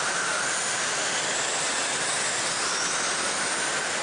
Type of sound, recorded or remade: recorded